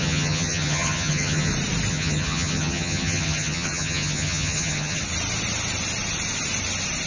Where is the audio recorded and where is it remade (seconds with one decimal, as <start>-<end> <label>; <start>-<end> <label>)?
0.0-1.5 remade; 1.5-1.9 recorded; 1.9-5.0 remade; 5.0-7.1 recorded